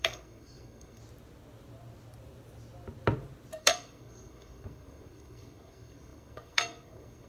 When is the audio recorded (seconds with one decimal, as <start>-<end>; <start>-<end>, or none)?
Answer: 1.0-3.6